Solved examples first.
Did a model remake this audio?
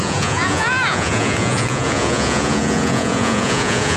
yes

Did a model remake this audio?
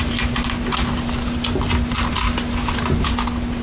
no